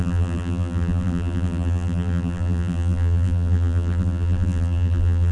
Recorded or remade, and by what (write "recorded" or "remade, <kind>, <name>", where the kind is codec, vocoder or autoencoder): remade, vocoder, BigVGAN v2